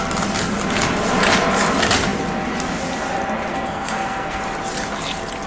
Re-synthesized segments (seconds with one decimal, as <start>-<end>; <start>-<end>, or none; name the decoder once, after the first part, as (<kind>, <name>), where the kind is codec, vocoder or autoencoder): 3.5-4.4 (codec, SNAC)